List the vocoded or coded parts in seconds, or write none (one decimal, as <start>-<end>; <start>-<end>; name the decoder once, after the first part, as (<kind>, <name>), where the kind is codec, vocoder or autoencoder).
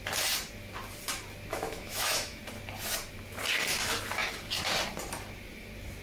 1.5-2.4 (autoencoder, DAC-VAE)